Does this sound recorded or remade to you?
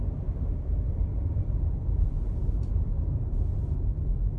recorded